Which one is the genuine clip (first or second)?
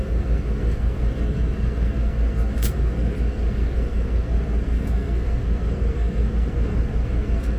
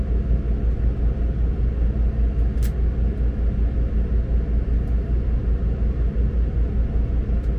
second